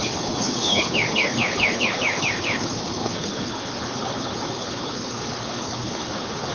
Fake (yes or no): yes